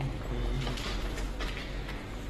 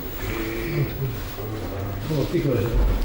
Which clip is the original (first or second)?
first